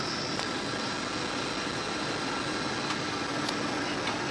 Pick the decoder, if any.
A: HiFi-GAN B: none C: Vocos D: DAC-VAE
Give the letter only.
B